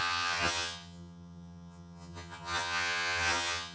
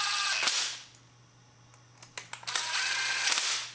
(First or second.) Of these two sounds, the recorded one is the second